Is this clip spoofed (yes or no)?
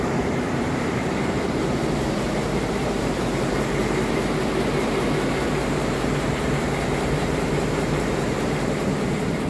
yes